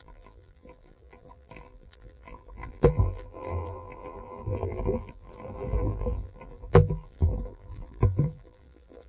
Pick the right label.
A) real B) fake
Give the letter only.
B